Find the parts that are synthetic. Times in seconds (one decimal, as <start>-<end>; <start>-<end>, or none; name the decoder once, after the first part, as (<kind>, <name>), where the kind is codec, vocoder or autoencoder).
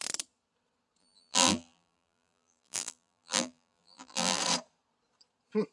1.0-4.4 (vocoder, BigVGAN v2)